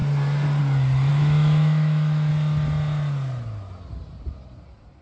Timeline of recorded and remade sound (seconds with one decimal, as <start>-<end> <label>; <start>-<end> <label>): 0.0-1.1 recorded; 1.1-2.3 remade; 2.3-5.0 recorded